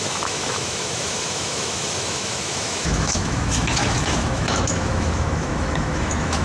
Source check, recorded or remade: remade